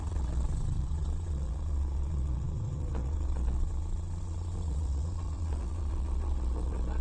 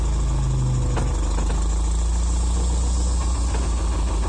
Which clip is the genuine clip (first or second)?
second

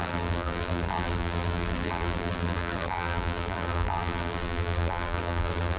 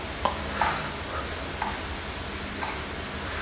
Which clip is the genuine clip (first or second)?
second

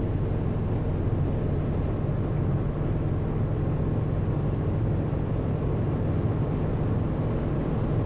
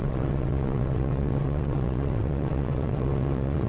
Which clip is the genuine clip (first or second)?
first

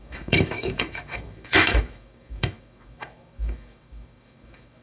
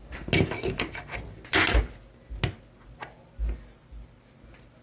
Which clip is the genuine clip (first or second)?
second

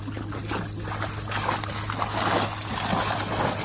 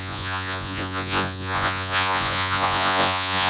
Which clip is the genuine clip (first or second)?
first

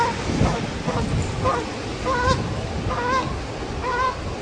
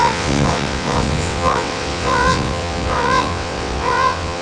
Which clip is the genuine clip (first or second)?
first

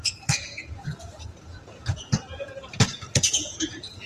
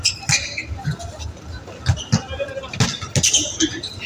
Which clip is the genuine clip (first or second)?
second